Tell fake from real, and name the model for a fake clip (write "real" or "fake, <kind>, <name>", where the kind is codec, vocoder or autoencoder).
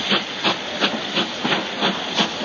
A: real